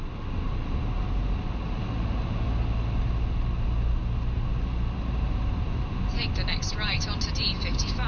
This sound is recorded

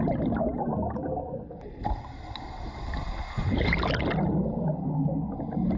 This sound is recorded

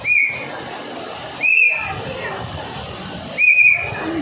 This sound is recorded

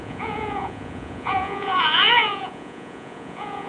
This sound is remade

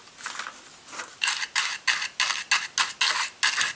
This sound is recorded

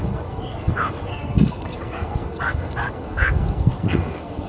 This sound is remade